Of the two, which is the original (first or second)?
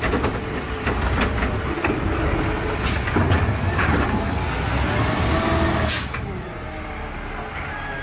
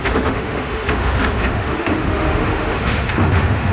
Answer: first